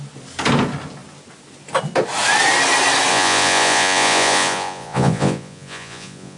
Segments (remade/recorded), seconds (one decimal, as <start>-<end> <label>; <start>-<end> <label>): 0.0-3.1 recorded; 3.1-6.4 remade